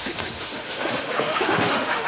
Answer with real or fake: fake